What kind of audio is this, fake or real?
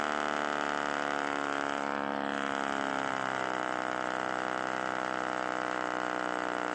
real